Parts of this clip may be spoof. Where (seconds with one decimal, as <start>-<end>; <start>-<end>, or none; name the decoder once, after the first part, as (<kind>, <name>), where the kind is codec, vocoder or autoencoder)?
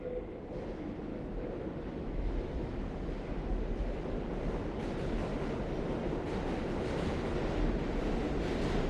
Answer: 1.1-3.8 (autoencoder, DAC-VAE)